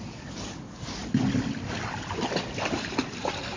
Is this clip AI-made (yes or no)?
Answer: no